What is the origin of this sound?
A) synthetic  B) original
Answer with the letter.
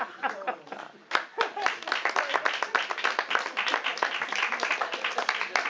B